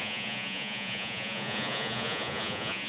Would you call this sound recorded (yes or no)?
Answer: no